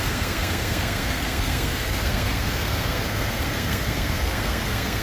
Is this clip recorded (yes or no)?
no